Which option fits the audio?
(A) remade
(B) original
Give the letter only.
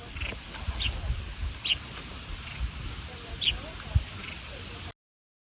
B